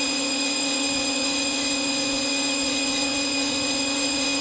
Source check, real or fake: fake